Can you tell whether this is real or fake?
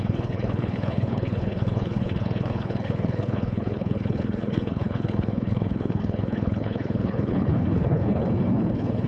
fake